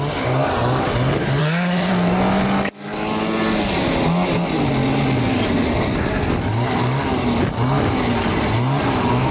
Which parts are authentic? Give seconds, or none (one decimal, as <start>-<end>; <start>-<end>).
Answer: 0.0-1.4; 1.9-9.3